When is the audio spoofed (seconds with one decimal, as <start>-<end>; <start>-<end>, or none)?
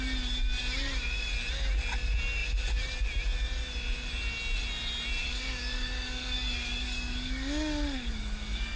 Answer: 5.2-8.8